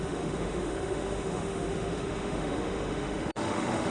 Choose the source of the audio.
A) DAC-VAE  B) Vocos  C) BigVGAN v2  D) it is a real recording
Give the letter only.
A